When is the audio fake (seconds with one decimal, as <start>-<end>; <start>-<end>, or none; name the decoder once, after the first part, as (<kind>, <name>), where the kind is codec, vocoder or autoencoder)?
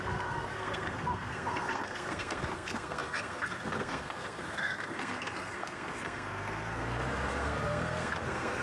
0.0-8.6 (codec, SNAC)